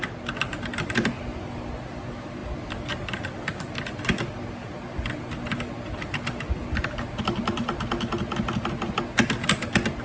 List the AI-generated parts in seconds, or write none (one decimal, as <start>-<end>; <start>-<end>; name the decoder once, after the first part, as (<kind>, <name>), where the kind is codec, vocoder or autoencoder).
none

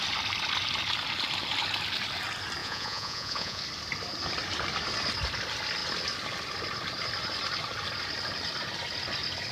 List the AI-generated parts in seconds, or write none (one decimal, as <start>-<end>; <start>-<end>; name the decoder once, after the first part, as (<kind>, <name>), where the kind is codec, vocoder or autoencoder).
2.6-3.6 (vocoder, Vocos)

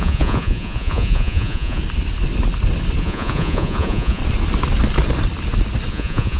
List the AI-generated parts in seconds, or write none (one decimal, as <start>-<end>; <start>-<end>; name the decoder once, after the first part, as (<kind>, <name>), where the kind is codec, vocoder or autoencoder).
0.0-1.8 (vocoder, Vocos); 3.0-4.2; 5.9-6.4

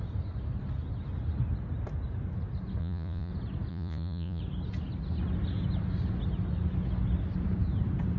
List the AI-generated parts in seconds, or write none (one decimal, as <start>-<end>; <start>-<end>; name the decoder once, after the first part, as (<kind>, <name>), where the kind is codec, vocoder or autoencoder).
2.8-3.3 (vocoder, Vocos); 3.7-4.4